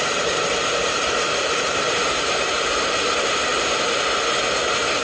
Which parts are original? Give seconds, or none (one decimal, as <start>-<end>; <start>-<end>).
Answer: 3.5-5.0